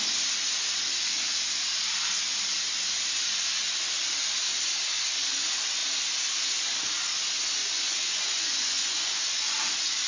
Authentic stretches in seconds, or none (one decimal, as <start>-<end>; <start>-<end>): 0.0-7.6; 9.2-10.1